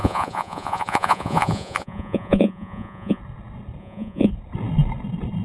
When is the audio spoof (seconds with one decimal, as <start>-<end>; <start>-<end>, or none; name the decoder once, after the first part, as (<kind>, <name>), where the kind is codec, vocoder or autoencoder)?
0.0-3.2 (vocoder, Vocos); 3.8-4.3

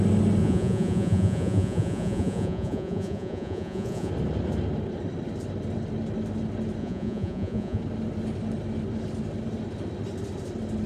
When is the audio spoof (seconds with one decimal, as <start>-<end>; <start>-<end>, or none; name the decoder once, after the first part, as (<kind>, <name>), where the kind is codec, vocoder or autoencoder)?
0.4-4.1 (vocoder, Vocos); 6.8-7.8

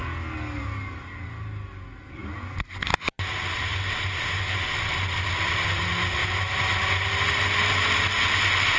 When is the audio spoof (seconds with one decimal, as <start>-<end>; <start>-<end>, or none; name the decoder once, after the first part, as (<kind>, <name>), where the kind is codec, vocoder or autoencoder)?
none